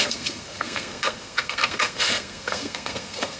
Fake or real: fake